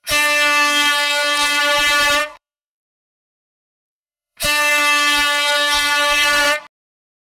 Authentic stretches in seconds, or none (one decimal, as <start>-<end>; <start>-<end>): 1.6-2.2; 6.6-7.4